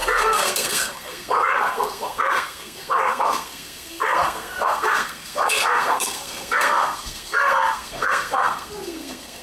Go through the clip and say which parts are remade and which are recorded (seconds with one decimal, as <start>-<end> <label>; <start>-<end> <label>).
0.0-9.4 remade